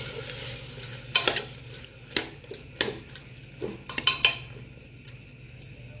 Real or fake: real